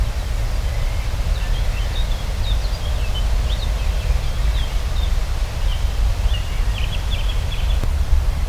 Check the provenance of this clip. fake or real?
real